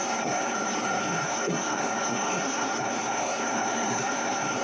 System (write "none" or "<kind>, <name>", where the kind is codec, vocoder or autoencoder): codec, SNAC